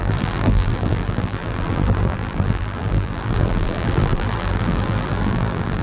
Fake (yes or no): yes